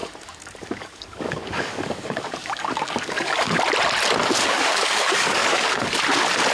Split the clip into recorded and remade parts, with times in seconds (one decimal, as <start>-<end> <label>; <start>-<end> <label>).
0.0-3.6 remade; 3.6-4.2 recorded; 4.2-6.0 remade; 6.0-6.5 recorded